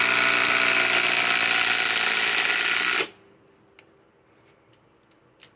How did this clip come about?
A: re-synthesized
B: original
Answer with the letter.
B